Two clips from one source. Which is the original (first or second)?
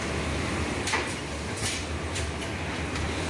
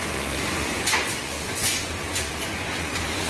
first